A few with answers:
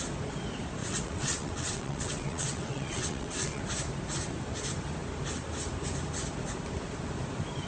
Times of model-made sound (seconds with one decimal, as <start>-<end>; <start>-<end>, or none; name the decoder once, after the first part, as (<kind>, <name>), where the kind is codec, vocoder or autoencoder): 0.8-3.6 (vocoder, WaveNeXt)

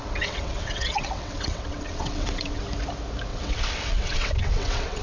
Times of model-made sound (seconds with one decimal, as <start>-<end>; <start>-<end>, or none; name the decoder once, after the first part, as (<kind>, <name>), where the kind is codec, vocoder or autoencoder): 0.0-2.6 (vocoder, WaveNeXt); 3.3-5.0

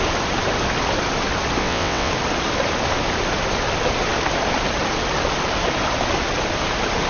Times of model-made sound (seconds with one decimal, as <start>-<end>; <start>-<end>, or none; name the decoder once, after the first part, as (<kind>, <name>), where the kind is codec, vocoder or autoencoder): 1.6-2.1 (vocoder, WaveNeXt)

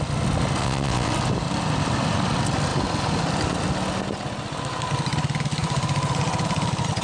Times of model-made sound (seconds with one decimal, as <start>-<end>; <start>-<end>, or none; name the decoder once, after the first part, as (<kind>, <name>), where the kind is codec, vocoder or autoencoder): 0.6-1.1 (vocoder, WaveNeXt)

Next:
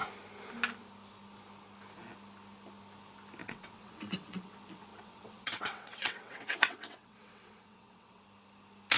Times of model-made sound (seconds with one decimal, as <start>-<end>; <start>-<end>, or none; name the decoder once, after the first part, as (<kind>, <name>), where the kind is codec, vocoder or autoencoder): 3.4-4.5 (vocoder, WaveNeXt); 4.9-8.2